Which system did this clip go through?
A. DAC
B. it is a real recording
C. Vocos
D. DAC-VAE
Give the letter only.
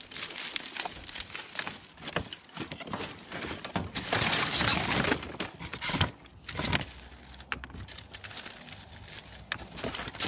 B